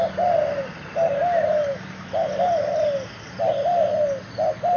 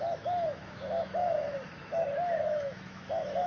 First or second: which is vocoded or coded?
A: second